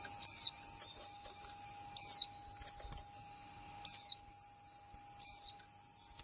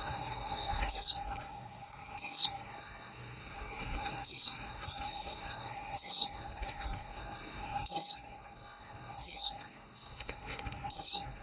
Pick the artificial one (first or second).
second